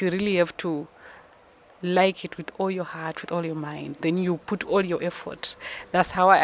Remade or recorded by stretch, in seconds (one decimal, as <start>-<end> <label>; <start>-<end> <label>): 0.0-6.4 recorded